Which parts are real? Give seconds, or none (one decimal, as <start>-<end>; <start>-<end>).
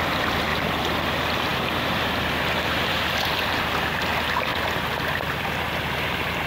0.0-0.5; 1.0-1.5; 3.1-6.5